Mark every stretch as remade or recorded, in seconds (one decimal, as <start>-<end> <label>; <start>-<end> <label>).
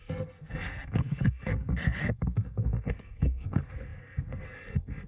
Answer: 0.0-5.1 remade